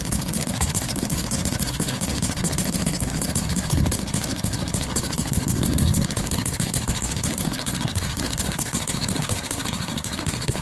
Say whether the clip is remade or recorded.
remade